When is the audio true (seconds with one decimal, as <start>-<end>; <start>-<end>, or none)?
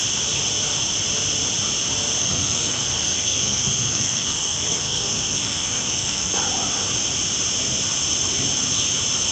0.0-2.2; 6.4-9.3